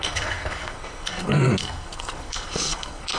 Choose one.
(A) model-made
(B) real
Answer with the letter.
A